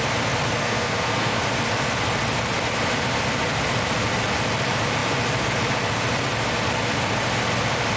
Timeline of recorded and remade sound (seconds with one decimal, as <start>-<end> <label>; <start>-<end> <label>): 0.0-0.6 recorded; 0.6-1.4 remade; 1.4-8.0 recorded